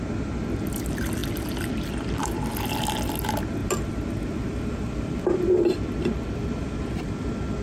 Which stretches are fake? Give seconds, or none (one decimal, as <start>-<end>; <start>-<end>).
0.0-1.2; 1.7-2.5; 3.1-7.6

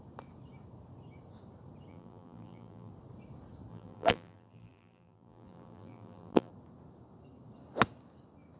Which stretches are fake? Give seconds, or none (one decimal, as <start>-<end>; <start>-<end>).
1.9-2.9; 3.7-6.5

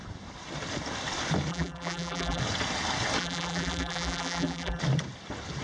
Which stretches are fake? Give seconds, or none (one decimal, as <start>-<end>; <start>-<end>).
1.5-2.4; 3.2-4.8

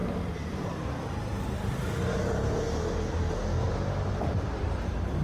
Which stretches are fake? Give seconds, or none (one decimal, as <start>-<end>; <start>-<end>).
0.0-1.3; 4.3-5.2

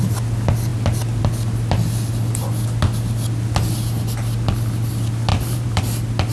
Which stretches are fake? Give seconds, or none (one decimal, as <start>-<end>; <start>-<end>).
5.3-5.8

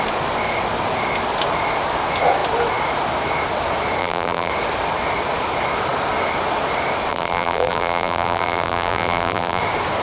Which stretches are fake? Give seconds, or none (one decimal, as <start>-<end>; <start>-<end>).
4.0-4.5; 7.1-9.6